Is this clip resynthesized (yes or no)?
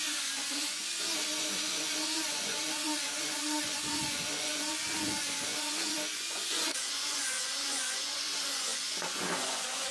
yes